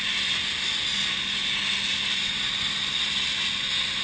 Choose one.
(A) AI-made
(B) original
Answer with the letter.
B